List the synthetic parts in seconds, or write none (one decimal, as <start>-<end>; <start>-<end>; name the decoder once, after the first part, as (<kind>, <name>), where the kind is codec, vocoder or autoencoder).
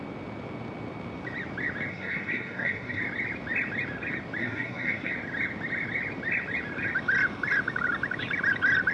1.9-3.0 (codec, SNAC); 4.4-5.1